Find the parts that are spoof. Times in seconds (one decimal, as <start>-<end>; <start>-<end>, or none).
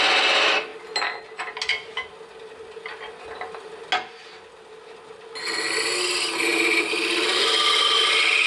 6.5-7.3